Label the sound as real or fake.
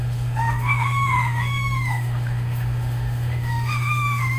fake